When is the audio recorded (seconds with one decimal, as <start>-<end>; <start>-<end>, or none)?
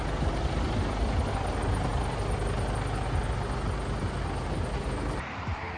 0.0-5.8